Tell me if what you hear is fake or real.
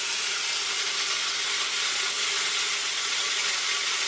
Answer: real